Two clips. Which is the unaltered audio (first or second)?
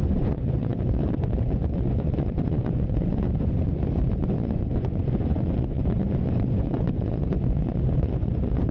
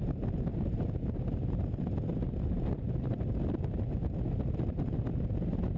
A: second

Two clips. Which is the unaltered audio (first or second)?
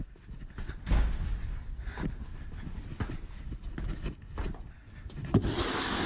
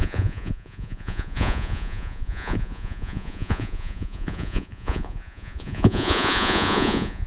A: first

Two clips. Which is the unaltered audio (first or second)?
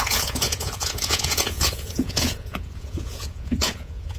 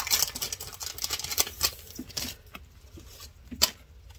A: second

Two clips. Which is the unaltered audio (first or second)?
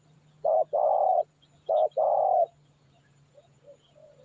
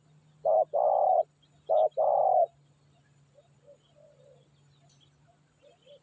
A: second